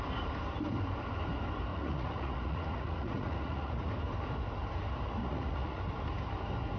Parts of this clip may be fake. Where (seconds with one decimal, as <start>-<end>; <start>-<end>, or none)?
1.7-3.9; 5.2-5.8